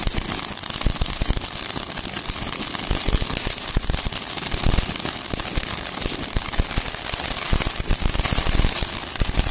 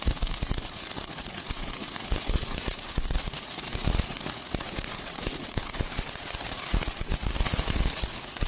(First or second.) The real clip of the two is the first